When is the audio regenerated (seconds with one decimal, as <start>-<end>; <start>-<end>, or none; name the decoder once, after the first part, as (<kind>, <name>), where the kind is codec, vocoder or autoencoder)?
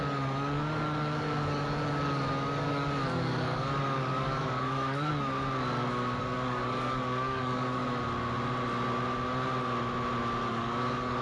0.0-5.1 (codec, DAC); 6.2-7.8; 10.5-11.2